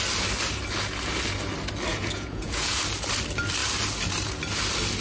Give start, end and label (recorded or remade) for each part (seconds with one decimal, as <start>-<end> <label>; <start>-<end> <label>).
0.0-1.9 recorded; 1.9-2.8 remade; 2.8-5.0 recorded